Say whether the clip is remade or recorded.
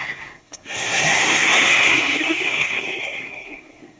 remade